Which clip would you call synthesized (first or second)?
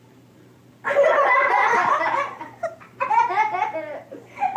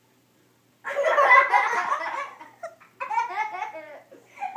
first